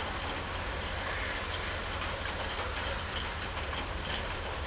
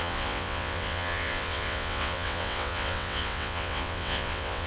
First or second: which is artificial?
second